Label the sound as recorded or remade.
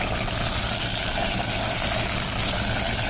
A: recorded